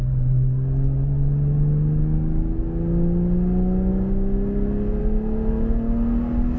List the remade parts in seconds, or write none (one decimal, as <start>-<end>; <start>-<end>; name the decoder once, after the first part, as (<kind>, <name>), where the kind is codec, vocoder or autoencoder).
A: none